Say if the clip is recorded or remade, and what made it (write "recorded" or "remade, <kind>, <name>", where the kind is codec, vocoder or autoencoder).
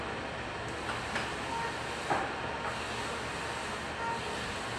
recorded